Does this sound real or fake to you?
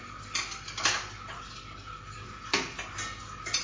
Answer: real